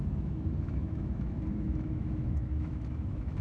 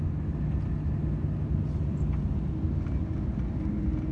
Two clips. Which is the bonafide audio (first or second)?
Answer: second